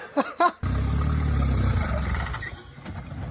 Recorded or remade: recorded